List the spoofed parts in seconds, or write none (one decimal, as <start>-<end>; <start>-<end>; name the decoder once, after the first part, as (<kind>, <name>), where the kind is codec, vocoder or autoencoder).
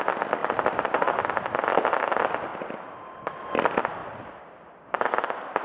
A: 2.5-3.5 (vocoder, BigVGAN v2)